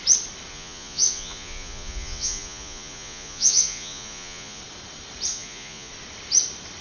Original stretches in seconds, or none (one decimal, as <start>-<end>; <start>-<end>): 0.0-0.5; 4.6-5.3; 5.9-6.8